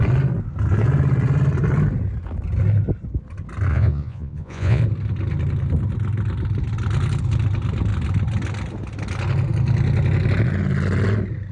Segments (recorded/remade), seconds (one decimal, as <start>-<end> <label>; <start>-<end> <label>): 0.0-3.7 recorded; 3.7-4.8 remade; 4.8-11.5 recorded